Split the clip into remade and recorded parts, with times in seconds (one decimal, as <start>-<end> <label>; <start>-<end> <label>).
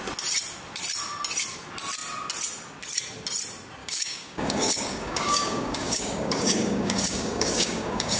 0.0-3.8 recorded; 3.8-8.2 remade